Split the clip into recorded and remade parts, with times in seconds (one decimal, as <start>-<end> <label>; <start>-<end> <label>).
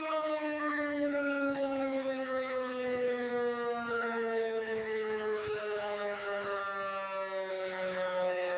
0.0-3.3 remade; 3.3-3.9 recorded; 3.9-6.6 remade; 6.6-7.5 recorded; 7.5-8.6 remade